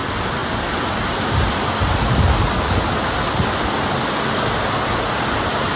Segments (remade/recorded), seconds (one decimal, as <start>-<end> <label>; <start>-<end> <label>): 0.0-5.8 recorded